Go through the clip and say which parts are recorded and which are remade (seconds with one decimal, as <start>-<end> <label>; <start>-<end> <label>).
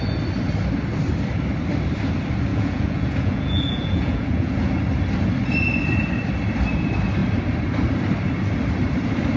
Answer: 0.0-2.5 recorded; 2.5-4.8 remade; 4.8-9.4 recorded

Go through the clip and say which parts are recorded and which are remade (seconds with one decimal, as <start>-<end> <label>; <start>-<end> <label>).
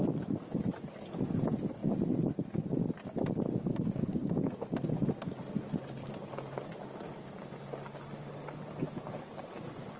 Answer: 0.0-10.0 recorded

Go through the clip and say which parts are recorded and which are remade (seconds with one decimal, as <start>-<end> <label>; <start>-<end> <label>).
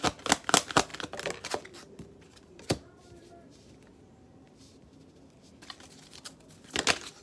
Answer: 0.0-7.2 recorded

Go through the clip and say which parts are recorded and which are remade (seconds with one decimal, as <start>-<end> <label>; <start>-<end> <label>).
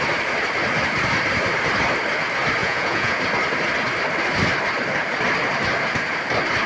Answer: 0.0-2.6 recorded; 2.6-3.2 remade; 3.2-6.7 recorded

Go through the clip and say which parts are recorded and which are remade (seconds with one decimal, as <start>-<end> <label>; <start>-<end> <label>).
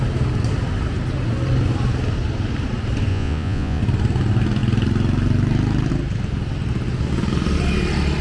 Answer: 0.0-3.1 recorded; 3.1-3.8 remade; 3.8-8.2 recorded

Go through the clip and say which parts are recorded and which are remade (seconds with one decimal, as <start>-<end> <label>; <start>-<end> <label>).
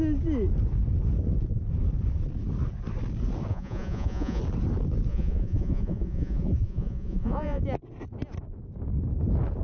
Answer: 0.0-3.5 recorded; 3.5-4.4 remade; 4.4-5.1 recorded; 5.1-7.6 remade; 7.6-9.6 recorded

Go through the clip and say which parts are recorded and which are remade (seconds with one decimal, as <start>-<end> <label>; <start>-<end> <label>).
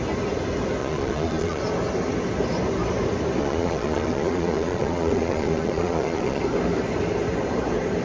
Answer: 0.0-0.8 recorded; 0.8-1.6 remade; 1.6-3.4 recorded; 3.4-6.4 remade; 6.4-8.0 recorded